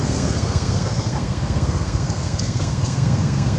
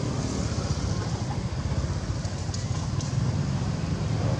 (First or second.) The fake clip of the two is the first